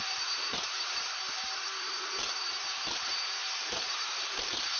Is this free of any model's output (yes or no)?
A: no